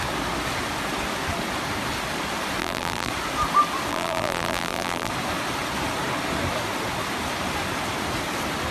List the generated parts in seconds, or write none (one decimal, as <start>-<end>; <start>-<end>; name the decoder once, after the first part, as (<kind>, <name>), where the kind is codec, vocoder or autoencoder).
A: 2.6-3.1 (vocoder, BigVGAN v2); 3.9-5.1